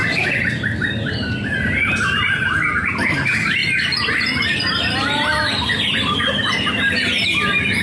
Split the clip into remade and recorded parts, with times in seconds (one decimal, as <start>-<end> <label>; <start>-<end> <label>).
0.0-2.9 remade; 2.9-3.6 recorded; 3.6-6.7 remade; 6.7-7.8 recorded

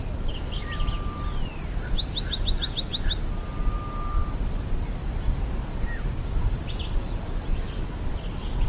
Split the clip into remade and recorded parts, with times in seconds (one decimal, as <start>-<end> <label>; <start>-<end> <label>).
0.0-8.7 recorded

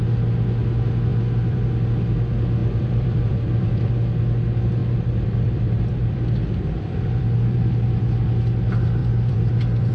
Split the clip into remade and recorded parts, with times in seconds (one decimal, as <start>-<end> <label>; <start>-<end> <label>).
0.0-1.1 recorded; 1.1-1.7 remade; 1.7-2.6 recorded; 2.6-3.9 remade; 3.9-4.8 recorded; 4.8-8.3 remade; 8.3-9.0 recorded; 9.0-9.9 remade